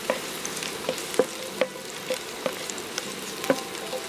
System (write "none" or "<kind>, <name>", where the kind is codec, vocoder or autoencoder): none